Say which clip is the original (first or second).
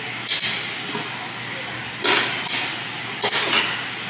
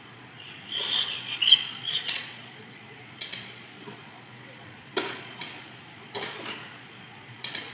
first